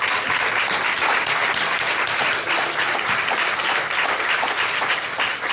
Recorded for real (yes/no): no